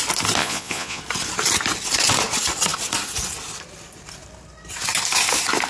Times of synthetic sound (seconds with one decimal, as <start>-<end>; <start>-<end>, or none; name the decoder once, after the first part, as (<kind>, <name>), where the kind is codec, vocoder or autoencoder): 0.4-1.0 (vocoder, Vocos)